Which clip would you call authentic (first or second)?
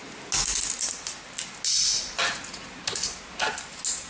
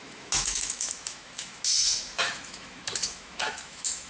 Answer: first